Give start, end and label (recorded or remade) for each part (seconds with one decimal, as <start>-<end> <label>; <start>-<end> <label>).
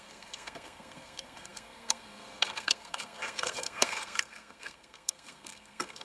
0.0-6.0 remade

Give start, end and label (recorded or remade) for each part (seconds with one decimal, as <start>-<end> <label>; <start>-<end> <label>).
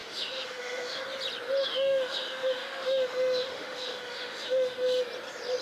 0.0-1.0 remade; 1.0-1.6 recorded; 1.6-5.0 remade; 5.0-5.6 recorded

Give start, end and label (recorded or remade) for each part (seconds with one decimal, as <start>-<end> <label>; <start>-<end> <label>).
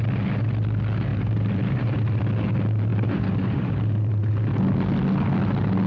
0.0-1.1 recorded; 1.1-2.2 remade; 2.2-2.9 recorded; 2.9-4.3 remade; 4.3-5.9 recorded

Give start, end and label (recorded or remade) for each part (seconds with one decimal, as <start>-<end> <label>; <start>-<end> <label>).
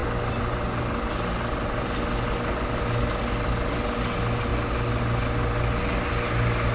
0.0-6.7 recorded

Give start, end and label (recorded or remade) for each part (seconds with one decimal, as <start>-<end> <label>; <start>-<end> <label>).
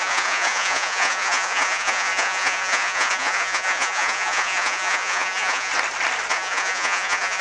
0.0-5.7 remade; 5.7-6.3 recorded; 6.3-7.4 remade